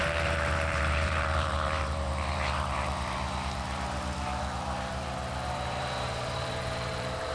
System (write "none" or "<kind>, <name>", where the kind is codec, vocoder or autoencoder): vocoder, BigVGAN v2